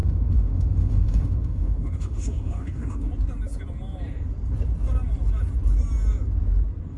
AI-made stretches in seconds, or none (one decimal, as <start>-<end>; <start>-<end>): 0.0-3.1